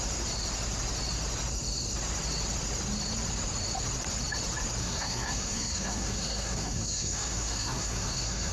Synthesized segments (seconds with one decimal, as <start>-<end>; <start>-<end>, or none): 4.8-8.5